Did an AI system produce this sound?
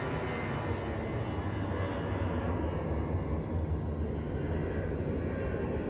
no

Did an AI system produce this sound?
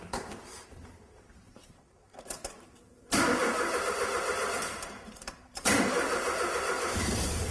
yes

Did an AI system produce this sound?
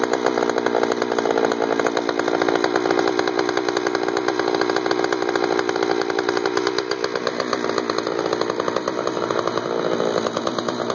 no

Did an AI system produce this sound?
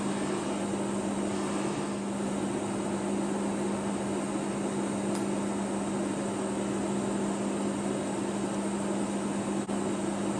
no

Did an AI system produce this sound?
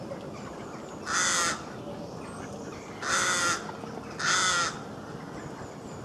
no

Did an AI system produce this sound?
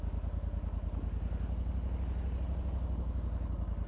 no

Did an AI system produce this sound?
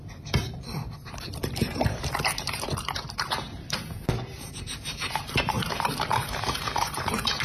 yes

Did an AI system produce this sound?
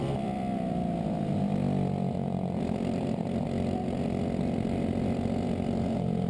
yes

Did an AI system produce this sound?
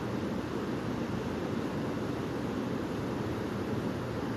no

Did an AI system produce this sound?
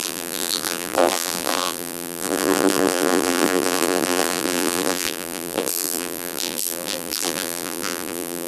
yes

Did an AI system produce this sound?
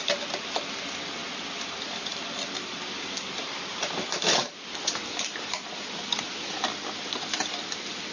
yes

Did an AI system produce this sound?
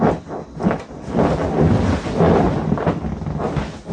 no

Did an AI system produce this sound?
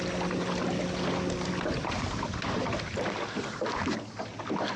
no